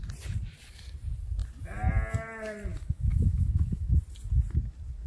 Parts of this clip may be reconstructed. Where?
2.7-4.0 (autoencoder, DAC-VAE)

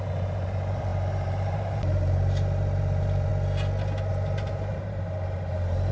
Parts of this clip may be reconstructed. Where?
0.0-3.3 (vocoder, BigVGAN v2); 4.1-5.9

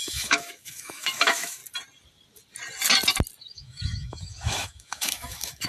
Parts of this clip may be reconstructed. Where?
0.0-1.6 (autoencoder, DAC-VAE); 3.4-5.7

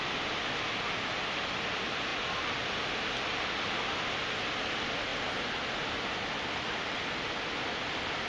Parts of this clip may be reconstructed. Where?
none

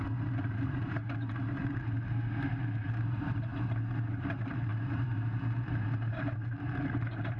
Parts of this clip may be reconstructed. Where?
0.0-1.6 (vocoder, BigVGAN v2); 2.5-3.5; 4.3-7.4

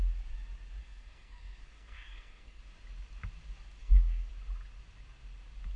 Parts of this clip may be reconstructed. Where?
0.8-2.6 (codec, SNAC); 3.8-4.3

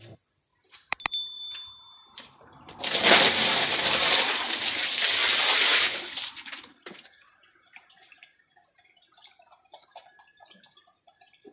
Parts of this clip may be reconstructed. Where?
0.5-2.8 (vocoder, BigVGAN v2); 5.7-7.9